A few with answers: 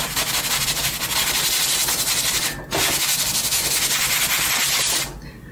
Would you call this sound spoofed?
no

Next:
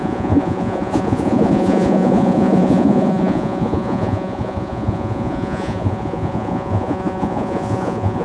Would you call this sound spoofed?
yes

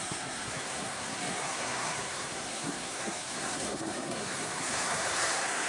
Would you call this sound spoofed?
yes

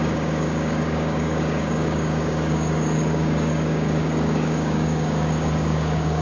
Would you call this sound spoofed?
yes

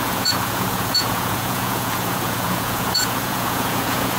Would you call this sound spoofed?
yes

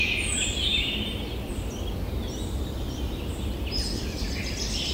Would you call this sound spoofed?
no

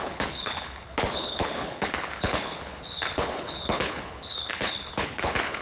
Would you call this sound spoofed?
yes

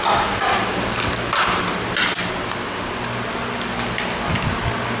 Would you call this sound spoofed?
no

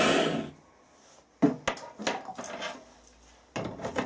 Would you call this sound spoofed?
no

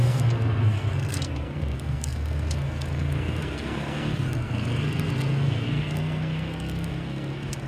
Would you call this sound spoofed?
yes